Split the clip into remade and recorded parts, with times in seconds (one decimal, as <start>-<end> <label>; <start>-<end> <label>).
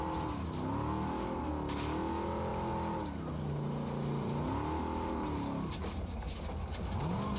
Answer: 0.0-7.4 recorded